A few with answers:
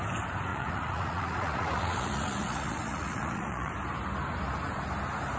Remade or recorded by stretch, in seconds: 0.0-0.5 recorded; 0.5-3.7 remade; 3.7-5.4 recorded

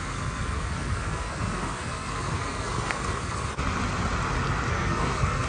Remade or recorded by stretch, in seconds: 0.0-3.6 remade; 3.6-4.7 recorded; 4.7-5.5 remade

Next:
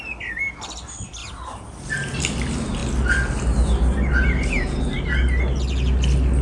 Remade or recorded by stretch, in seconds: 0.0-6.4 recorded

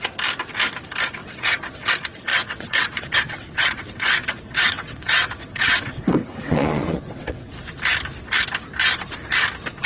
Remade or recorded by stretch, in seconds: 0.0-1.2 recorded; 1.2-1.9 remade; 1.9-2.3 recorded; 2.3-7.5 remade; 7.5-9.9 recorded

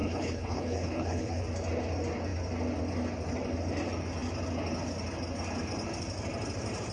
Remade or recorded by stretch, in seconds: 0.0-1.4 remade; 1.4-6.9 recorded

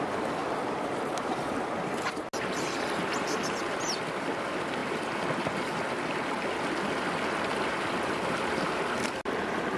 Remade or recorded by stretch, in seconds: 0.0-9.8 recorded

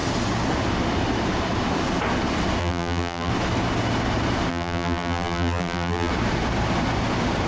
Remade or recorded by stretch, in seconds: 0.0-2.6 recorded; 2.6-3.3 remade; 3.3-4.5 recorded; 4.5-6.1 remade; 6.1-7.5 recorded

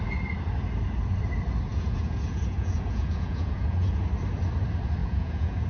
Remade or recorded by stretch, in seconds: 0.0-1.7 recorded; 1.7-4.0 remade; 4.0-5.0 recorded; 5.0-5.7 remade